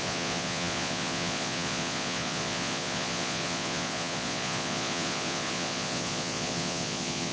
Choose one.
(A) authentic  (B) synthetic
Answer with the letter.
B